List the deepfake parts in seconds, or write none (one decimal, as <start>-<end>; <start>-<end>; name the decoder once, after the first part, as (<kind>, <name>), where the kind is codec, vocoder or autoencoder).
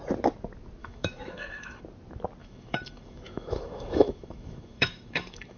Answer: 0.8-1.8 (autoencoder, DAC-VAE); 2.4-5.6